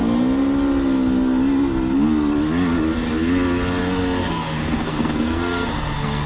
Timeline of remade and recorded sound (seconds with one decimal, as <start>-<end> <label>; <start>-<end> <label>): 0.0-4.2 recorded; 4.2-6.3 remade